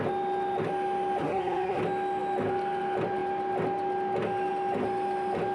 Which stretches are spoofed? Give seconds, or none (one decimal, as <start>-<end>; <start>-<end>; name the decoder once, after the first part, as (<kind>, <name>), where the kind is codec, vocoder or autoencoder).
1.2-1.8 (codec, SNAC)